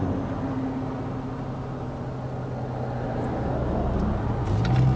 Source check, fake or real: real